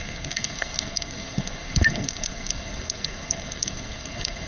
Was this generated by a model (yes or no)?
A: yes